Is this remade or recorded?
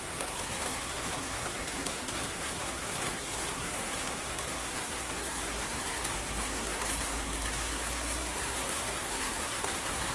remade